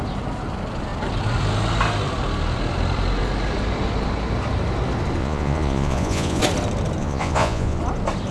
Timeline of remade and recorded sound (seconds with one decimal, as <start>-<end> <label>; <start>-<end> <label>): 0.0-5.2 recorded; 5.2-6.4 remade; 6.4-7.0 recorded; 7.0-7.8 remade; 7.8-8.3 recorded